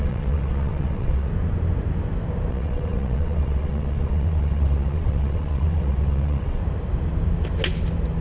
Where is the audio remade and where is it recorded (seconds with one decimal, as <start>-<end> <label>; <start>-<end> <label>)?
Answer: 0.0-1.3 remade; 1.3-2.5 recorded; 2.5-6.6 remade; 6.6-8.2 recorded